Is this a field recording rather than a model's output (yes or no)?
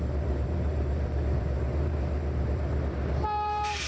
no